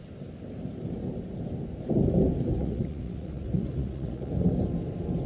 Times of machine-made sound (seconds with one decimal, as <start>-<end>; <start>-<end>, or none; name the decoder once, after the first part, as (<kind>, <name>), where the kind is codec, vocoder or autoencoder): 2.6-4.3 (vocoder, Vocos)